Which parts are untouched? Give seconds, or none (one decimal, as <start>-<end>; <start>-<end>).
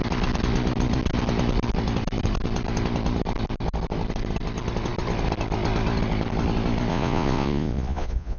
0.0-6.9